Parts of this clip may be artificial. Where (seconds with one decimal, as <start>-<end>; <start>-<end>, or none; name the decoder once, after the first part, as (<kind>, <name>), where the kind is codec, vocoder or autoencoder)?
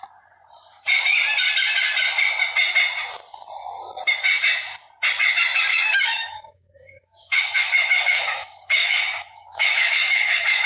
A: 5.7-10.7 (autoencoder, DAC-VAE)